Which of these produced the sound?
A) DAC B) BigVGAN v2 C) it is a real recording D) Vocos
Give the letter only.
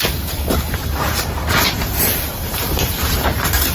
B